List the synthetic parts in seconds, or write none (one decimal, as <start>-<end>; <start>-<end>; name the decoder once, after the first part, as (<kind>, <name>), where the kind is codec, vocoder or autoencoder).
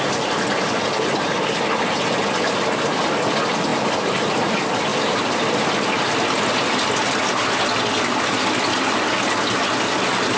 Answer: none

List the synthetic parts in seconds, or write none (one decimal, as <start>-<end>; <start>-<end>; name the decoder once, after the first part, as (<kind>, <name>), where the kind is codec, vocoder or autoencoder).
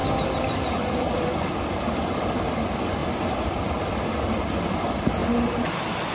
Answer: 0.0-2.5 (vocoder, BigVGAN v2); 3.0-3.7